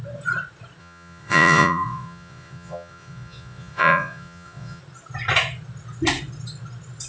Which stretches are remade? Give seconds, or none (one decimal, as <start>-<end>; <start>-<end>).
0.8-4.8